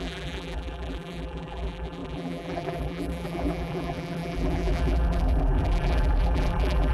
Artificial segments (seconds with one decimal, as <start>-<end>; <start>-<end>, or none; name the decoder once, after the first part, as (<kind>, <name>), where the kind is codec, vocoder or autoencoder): 0.0-6.9 (vocoder, BigVGAN v2)